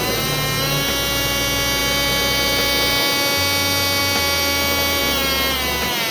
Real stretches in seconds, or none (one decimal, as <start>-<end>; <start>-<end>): 0.0-6.1